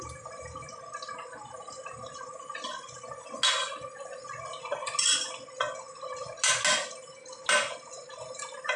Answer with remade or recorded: recorded